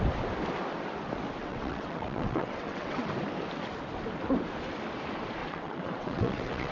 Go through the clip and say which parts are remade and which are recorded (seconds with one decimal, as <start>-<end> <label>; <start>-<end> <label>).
0.0-1.4 recorded; 1.4-3.1 remade; 3.1-5.4 recorded; 5.4-6.7 remade